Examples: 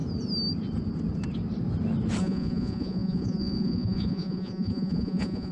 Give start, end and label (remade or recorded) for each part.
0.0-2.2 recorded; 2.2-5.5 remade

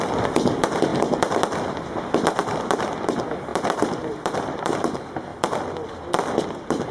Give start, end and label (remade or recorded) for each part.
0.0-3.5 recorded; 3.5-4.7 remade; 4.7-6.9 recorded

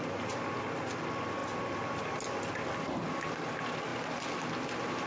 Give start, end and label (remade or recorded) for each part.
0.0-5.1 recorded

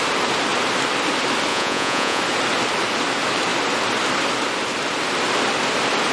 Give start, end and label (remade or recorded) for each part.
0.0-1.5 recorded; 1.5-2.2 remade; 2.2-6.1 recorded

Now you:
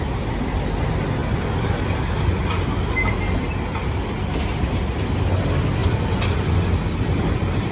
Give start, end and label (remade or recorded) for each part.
0.0-7.7 recorded

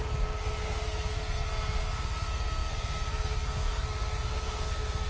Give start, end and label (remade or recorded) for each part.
0.0-5.1 remade